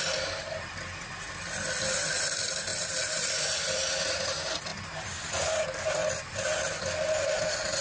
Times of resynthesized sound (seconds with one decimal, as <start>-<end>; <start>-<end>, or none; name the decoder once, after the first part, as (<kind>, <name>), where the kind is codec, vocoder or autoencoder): 2.7-3.9 (vocoder, BigVGAN v2)